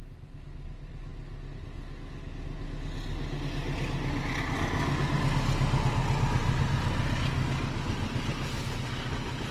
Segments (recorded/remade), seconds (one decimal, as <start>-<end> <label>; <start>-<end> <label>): 0.0-9.5 recorded